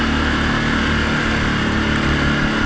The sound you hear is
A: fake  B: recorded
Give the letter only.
B